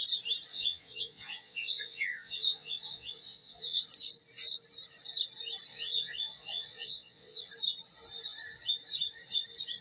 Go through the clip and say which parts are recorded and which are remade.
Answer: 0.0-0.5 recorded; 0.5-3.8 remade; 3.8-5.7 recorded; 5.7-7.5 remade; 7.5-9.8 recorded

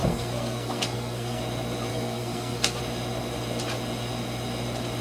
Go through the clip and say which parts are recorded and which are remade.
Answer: 0.0-1.4 remade; 1.4-1.9 recorded; 1.9-2.8 remade; 2.8-5.0 recorded

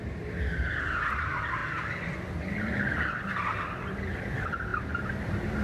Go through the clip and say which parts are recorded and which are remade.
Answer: 0.0-5.6 recorded

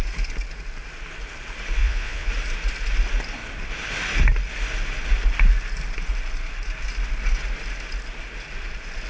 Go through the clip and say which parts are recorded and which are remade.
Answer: 0.0-1.8 recorded; 1.8-2.3 remade; 2.3-9.1 recorded

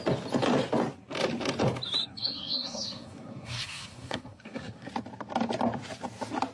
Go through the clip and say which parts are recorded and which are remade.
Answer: 0.0-2.0 recorded; 2.0-4.9 remade; 4.9-6.5 recorded